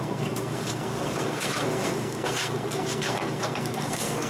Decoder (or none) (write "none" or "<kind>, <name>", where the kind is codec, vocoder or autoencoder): codec, SNAC